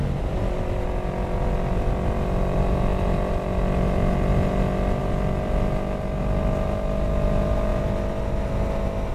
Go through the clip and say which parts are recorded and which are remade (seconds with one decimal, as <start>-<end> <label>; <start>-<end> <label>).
0.0-9.1 recorded

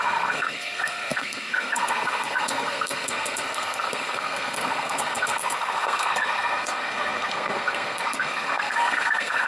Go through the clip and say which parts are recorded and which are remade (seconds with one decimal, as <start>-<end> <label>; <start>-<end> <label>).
0.0-9.5 remade

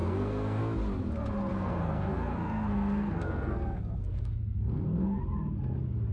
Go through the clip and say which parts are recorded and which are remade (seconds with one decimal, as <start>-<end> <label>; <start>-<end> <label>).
0.0-0.6 remade; 0.6-1.5 recorded; 1.5-5.2 remade; 5.2-6.1 recorded

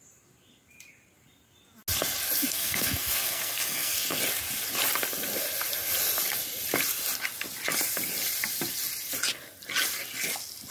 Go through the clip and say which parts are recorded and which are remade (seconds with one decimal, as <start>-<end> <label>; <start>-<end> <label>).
0.0-2.4 recorded; 2.4-4.2 remade; 4.2-10.7 recorded